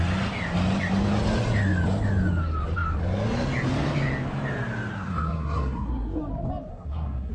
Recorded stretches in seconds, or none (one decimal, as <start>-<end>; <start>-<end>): 0.0-4.9; 6.2-6.7